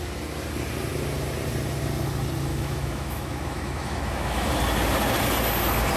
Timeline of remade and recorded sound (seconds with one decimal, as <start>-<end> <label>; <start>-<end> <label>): 0.0-2.5 recorded; 2.5-4.5 remade; 4.5-6.0 recorded